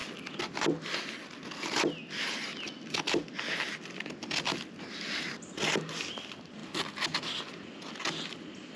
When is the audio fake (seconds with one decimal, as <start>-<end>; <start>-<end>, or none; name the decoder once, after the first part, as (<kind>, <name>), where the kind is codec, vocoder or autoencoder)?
none